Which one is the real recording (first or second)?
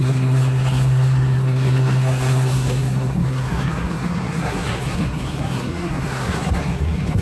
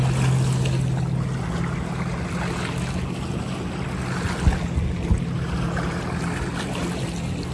second